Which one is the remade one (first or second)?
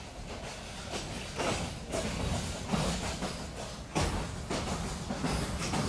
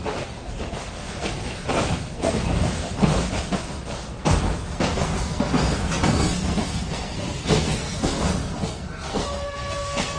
second